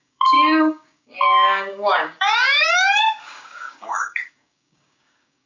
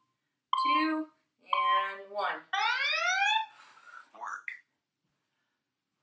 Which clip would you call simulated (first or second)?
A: first